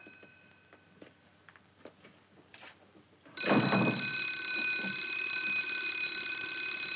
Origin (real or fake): real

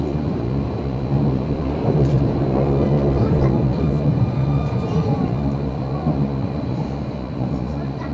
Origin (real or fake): fake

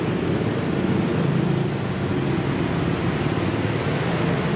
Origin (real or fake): real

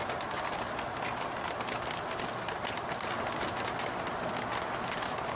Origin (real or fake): real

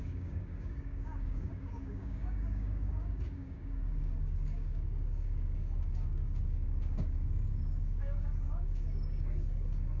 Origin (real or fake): fake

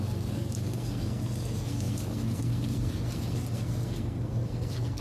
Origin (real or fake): fake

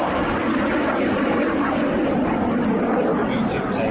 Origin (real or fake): fake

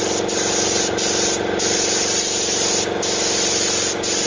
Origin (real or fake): real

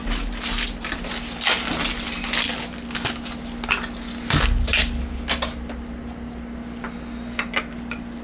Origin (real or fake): real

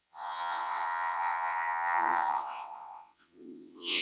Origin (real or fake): fake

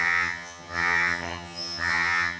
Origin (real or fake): fake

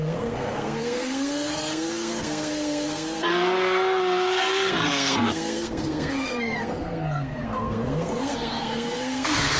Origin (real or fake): fake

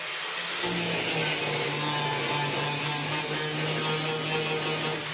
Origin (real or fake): real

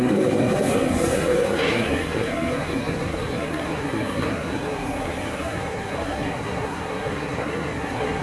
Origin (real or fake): fake